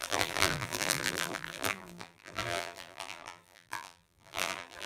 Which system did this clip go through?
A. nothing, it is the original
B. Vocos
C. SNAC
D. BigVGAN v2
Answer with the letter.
D